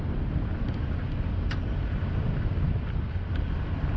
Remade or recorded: recorded